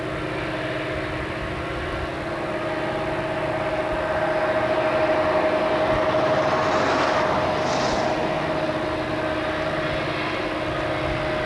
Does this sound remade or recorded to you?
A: recorded